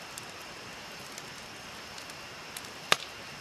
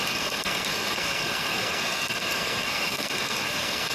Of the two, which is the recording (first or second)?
first